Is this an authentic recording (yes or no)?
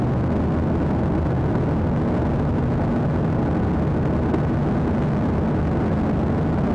yes